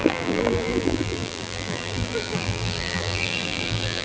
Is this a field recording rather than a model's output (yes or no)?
no